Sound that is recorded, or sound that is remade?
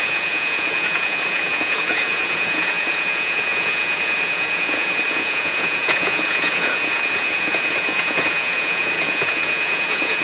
remade